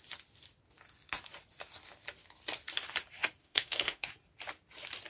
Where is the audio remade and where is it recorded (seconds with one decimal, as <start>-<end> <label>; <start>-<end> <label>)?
0.0-3.4 recorded; 3.4-4.1 remade; 4.1-5.1 recorded